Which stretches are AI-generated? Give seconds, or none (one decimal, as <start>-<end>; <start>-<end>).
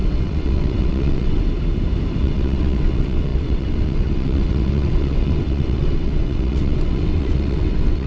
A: 0.0-1.4; 2.2-8.1